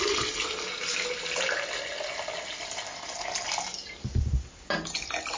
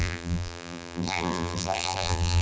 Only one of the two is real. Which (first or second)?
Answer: first